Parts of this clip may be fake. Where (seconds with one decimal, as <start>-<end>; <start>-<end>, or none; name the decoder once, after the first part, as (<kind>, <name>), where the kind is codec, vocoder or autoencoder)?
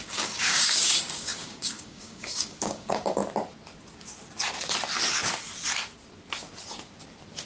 0.0-3.2 (codec, DAC)